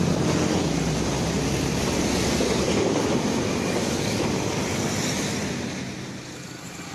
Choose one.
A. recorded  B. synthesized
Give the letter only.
A